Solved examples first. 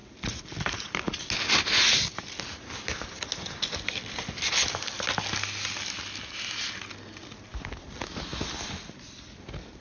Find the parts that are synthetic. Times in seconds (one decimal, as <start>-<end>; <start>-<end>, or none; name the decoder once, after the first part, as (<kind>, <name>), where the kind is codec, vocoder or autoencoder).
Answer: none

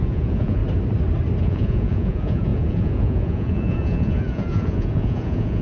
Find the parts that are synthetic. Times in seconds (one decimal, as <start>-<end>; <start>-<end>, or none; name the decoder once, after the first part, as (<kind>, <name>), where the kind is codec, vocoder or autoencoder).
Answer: 0.0-0.6 (vocoder, Vocos); 1.4-5.6

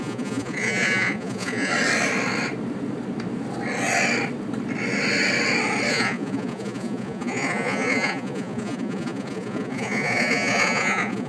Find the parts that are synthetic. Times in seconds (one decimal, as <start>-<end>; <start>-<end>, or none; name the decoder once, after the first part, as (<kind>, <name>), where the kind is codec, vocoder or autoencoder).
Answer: 0.0-1.7 (vocoder, Vocos); 5.9-11.3

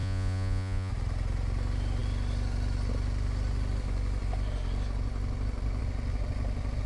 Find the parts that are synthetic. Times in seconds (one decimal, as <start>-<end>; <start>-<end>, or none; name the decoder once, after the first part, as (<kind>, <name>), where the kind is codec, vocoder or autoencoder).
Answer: 0.0-0.9 (vocoder, Vocos)

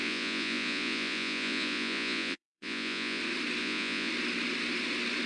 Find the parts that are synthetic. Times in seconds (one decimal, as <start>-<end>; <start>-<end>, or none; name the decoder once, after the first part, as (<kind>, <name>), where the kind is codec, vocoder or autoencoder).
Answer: 0.0-3.2 (vocoder, Vocos); 3.6-4.1